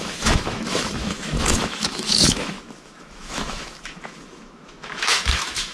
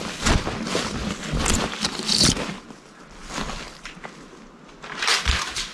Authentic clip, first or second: second